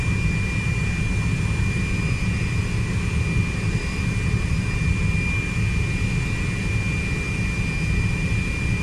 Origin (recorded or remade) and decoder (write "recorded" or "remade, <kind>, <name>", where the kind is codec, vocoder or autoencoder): recorded